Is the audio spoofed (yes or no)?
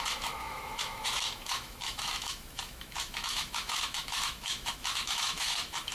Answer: yes